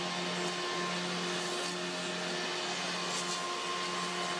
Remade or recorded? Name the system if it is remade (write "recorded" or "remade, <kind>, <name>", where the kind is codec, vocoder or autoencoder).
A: recorded